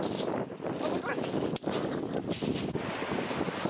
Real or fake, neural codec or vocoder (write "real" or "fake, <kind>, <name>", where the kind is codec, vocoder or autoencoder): real